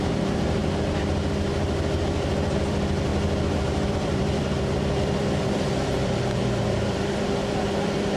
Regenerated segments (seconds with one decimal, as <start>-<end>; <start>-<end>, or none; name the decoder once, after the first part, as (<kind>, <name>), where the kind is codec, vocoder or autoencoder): 0.0-0.6 (vocoder, BigVGAN v2); 2.0-3.1; 3.9-8.2